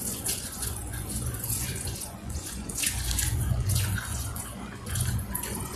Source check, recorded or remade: remade